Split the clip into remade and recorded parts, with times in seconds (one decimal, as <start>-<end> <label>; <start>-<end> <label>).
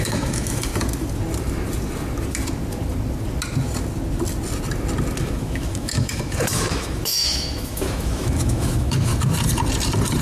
0.0-0.7 remade; 0.7-5.2 recorded; 5.2-9.1 remade; 9.1-10.2 recorded